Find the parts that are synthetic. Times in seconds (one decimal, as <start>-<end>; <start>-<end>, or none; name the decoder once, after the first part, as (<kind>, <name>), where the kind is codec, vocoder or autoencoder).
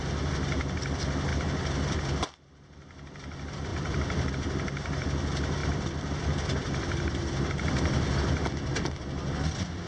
3.7-4.3 (vocoder, BigVGAN v2); 5.6-7.5